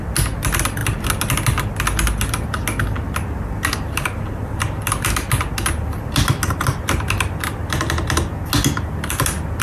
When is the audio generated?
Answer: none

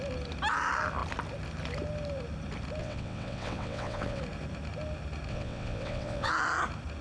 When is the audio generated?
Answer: 2.8-4.2 (vocoder, WaveNeXt); 5.3-6.3

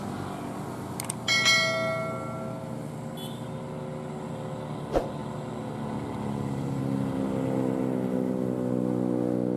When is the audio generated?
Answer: none

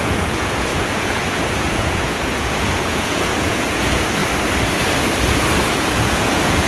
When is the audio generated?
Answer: 0.0-4.2 (vocoder, Vocos); 5.7-6.7

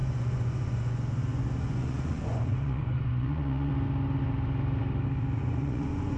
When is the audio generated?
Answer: 0.0-3.7 (vocoder, Vocos); 5.4-6.2

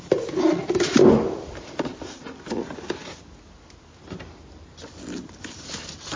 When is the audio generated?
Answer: none

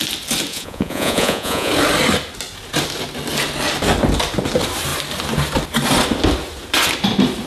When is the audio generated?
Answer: 0.5-1.7 (vocoder, Vocos)

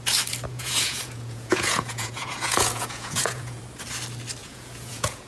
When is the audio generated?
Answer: 0.5-3.6 (vocoder, Vocos); 4.4-5.3